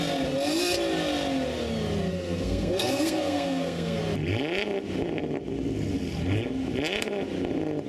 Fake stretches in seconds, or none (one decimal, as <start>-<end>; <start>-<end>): 2.1-4.0